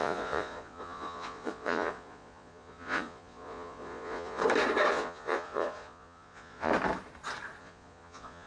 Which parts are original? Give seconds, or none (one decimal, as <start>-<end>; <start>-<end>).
4.4-4.9; 6.7-7.6